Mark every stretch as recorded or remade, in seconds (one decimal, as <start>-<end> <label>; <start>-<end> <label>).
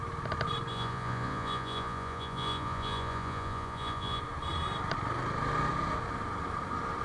0.0-0.7 recorded; 0.7-4.2 remade; 4.2-7.0 recorded